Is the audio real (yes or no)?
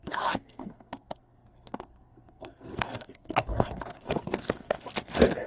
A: no